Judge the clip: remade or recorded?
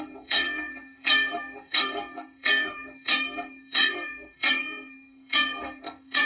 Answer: remade